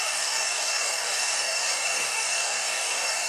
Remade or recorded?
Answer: remade